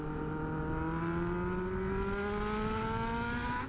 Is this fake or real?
real